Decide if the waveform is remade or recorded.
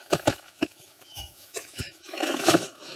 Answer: remade